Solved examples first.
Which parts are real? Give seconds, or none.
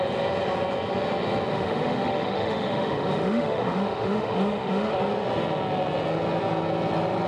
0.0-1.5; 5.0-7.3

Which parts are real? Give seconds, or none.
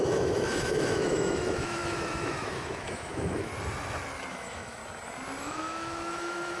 3.5-4.3; 4.8-5.4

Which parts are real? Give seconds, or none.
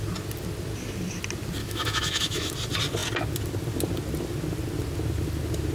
0.0-1.6; 2.5-5.7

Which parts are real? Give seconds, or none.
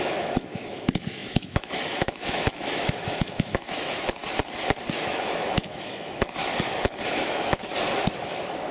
4.2-5.0; 6.4-7.1; 7.7-8.2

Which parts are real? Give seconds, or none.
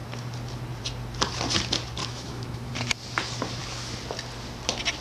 0.0-2.0; 2.7-5.0